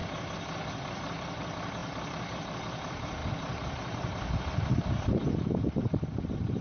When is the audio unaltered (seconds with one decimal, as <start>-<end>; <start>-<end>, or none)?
0.0-6.6

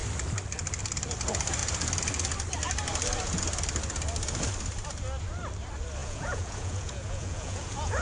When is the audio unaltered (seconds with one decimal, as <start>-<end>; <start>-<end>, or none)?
0.0-6.0

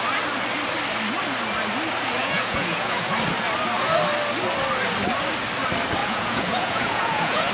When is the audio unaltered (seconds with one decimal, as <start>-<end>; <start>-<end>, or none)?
0.0-2.2; 3.1-6.0

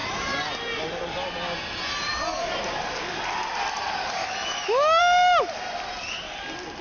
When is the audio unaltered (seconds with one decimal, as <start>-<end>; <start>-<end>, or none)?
0.0-4.2; 5.0-6.8

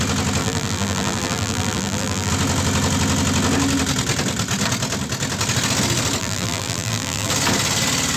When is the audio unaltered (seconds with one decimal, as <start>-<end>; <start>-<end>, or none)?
0.0-0.4; 2.3-6.2; 7.3-8.2

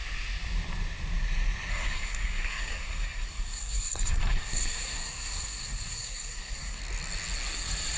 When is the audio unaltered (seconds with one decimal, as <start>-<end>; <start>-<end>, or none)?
0.0-1.7; 6.8-8.0

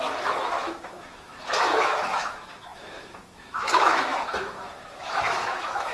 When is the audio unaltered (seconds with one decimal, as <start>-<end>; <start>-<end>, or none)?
none